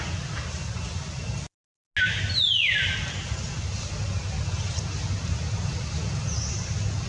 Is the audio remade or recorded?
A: recorded